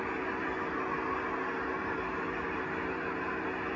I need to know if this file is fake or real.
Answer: real